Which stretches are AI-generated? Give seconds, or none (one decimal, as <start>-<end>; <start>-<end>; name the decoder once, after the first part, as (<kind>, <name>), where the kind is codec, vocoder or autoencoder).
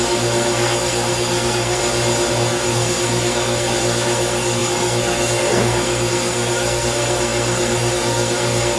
0.0-1.8 (codec, SNAC); 2.3-8.8